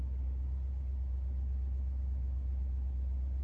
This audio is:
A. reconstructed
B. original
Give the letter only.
B